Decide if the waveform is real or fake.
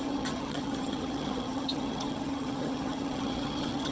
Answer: fake